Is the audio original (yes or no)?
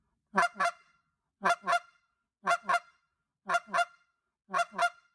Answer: yes